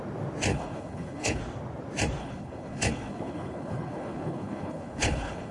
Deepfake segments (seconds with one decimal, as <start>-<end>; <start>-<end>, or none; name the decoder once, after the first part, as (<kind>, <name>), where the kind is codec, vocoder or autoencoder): 0.5-1.4 (codec, HILCodec); 2.2-5.5